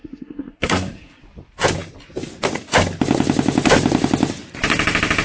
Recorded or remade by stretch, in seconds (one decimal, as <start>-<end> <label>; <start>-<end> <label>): 0.0-1.2 remade; 1.2-5.2 recorded